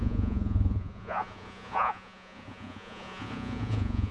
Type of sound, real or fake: fake